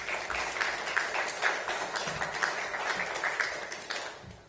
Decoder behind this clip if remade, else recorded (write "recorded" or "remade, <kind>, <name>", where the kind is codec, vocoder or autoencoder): recorded